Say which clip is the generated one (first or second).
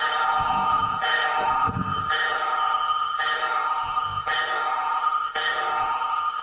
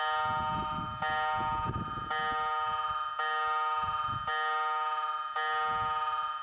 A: first